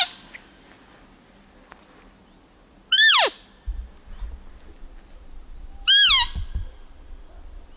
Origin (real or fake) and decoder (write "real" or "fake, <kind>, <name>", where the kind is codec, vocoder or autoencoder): real